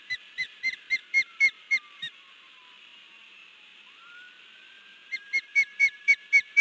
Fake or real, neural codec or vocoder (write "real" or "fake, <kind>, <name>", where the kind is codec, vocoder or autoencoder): fake, vocoder, BigVGAN v2